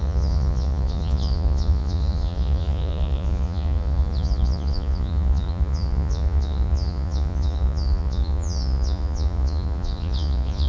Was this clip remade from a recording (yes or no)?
yes